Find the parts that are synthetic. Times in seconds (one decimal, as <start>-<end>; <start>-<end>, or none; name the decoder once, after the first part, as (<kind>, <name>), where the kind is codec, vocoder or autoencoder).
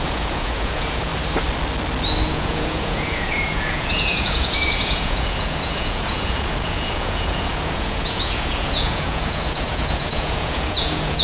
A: 0.0-1.1 (vocoder, Vocos); 2.3-11.2